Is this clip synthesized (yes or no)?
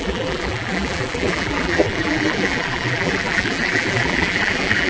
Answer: yes